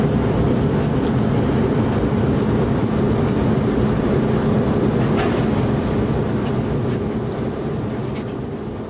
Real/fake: real